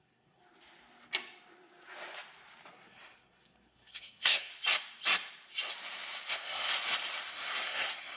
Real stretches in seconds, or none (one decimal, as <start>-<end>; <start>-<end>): 0.4-2.7; 4.5-6.3; 6.7-7.3